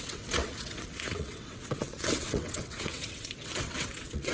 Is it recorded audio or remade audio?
remade